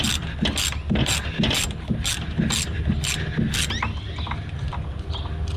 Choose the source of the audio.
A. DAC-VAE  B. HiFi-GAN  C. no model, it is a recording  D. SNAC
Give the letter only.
C